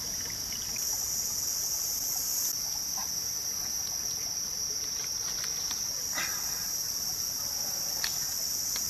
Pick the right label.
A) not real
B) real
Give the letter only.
B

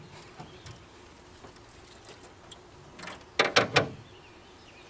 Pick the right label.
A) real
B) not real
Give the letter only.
A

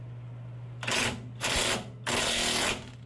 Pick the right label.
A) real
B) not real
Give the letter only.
A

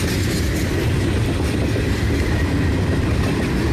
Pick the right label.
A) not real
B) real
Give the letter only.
B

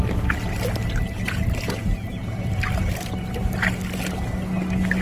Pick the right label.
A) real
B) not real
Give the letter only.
A